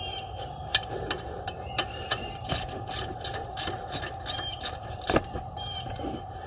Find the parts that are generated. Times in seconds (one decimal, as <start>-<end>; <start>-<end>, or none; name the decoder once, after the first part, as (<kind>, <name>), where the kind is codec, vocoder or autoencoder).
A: 0.0-6.5 (vocoder, BigVGAN v2)